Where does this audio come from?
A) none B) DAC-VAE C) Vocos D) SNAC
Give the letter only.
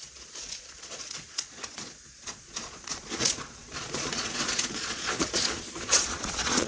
C